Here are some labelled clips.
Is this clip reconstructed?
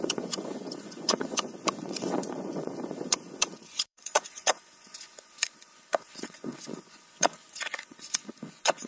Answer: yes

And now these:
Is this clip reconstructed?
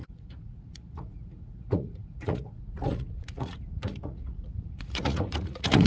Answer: yes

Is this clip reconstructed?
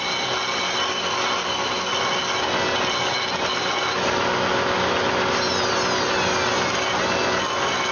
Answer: no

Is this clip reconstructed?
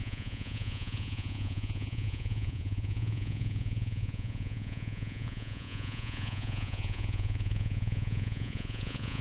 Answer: yes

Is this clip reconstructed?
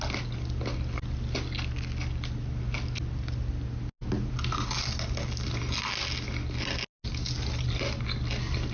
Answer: no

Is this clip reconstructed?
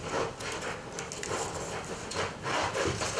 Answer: no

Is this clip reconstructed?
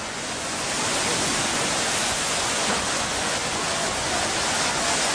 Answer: yes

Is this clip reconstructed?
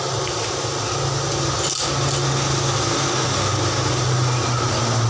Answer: no